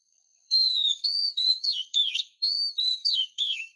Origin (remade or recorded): remade